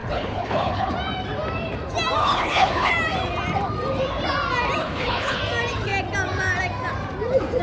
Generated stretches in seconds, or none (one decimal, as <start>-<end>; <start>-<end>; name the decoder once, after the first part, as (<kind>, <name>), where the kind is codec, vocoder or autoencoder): 0.0-0.9 (codec, HILCodec); 2.2-2.9; 4.8-5.4